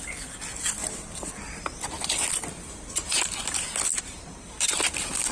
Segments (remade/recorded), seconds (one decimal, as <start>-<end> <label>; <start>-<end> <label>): 0.0-5.3 recorded